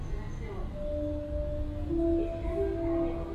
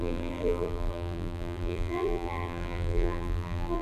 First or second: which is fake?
second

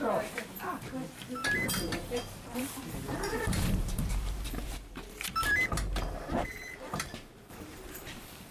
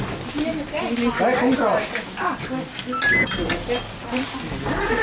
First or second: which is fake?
first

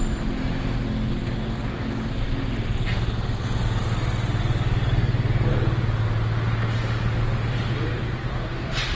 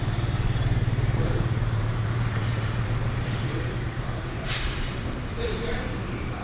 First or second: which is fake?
second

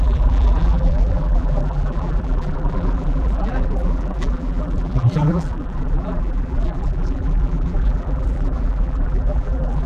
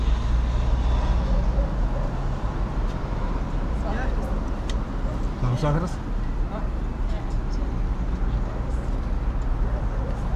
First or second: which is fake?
first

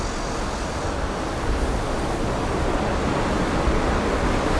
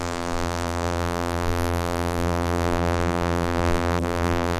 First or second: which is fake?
second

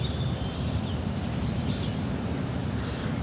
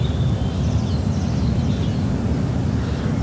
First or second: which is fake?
first